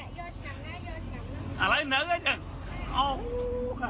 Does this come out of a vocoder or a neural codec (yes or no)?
no